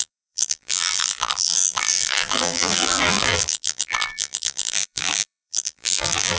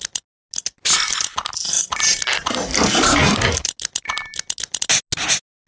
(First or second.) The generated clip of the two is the first